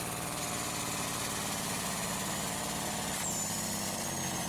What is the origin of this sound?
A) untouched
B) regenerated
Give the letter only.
A